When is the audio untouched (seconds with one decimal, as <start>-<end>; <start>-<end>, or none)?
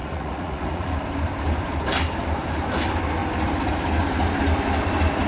0.9-5.3